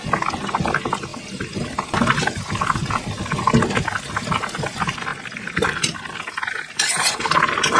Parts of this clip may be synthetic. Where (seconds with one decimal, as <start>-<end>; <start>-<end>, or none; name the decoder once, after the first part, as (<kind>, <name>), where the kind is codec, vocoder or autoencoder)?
5.1-6.0 (vocoder, BigVGAN v2)